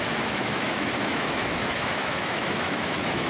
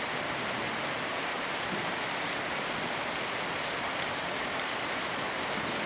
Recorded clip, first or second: second